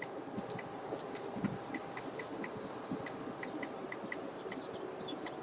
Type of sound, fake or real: real